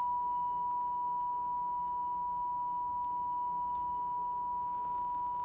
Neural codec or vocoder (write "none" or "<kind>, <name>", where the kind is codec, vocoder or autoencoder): codec, DAC